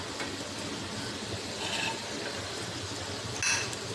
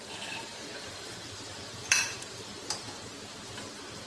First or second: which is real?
first